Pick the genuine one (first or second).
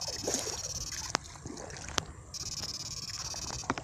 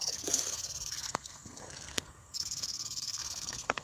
first